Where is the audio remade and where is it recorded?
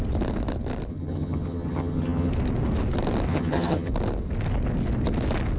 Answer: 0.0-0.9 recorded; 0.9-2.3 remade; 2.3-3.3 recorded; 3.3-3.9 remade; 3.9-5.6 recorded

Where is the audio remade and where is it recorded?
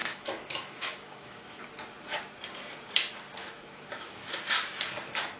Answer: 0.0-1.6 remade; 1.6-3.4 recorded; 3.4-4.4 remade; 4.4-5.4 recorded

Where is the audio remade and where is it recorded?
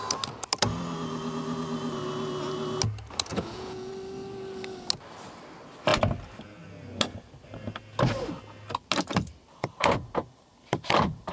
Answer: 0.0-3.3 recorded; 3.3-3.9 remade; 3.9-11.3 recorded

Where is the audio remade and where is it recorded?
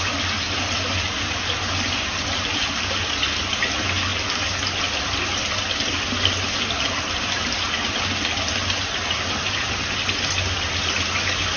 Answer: 0.0-11.6 recorded